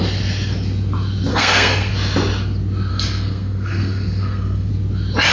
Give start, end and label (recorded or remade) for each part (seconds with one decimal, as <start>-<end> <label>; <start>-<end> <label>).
0.0-1.3 recorded; 1.3-1.9 remade; 1.9-2.9 recorded; 2.9-4.7 remade; 4.7-5.3 recorded